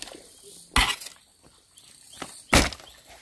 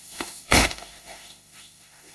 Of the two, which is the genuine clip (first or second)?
first